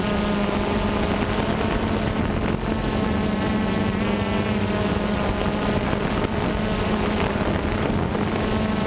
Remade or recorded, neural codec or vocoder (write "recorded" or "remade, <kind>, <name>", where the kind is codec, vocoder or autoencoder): recorded